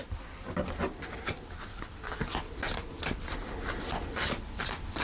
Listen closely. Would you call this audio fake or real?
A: real